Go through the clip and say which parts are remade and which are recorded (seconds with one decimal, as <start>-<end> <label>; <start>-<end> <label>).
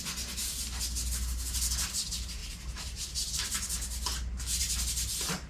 0.0-5.5 recorded